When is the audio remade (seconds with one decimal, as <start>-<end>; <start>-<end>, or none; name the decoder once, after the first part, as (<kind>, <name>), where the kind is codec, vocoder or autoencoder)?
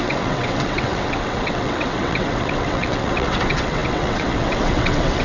0.0-5.2 (vocoder, WaveNeXt)